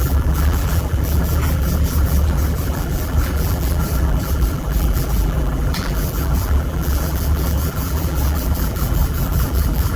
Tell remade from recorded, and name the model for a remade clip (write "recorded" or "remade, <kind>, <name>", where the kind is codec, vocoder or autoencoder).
remade, vocoder, BigVGAN v2